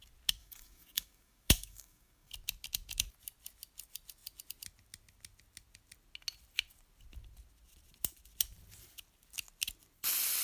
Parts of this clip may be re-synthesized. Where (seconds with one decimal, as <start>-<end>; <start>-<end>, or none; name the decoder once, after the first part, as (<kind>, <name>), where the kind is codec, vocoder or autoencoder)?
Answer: 0.4-2.3 (codec, DAC)